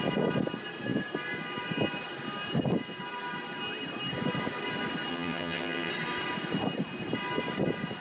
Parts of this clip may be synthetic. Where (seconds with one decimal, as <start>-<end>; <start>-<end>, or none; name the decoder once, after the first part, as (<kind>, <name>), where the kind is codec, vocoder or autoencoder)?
5.1-5.9 (vocoder, HiFi-GAN)